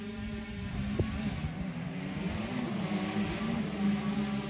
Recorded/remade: recorded